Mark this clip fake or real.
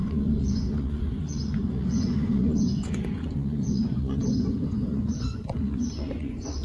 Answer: fake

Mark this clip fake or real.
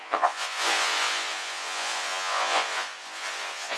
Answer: fake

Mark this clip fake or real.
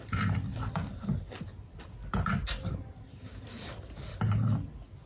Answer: real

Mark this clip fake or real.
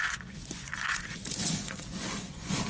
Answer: fake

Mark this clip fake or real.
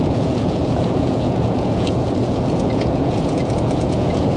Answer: fake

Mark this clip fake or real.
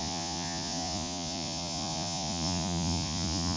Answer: fake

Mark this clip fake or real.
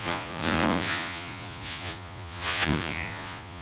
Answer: fake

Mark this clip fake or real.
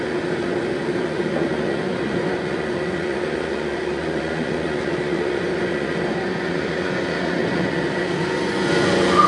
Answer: fake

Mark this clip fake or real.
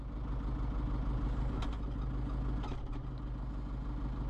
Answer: real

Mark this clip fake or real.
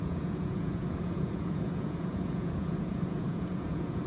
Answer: fake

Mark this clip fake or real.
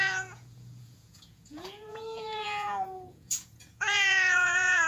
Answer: fake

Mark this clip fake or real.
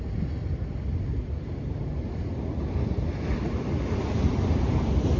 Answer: real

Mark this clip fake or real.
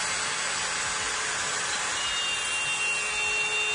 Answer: real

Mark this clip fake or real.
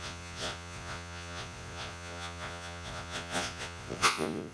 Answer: fake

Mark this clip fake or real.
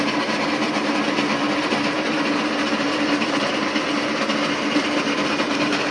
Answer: real